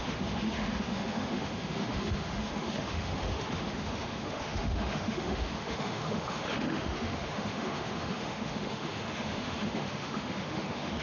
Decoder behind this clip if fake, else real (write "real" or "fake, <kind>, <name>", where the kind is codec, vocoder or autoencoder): fake, autoencoder, DAC-VAE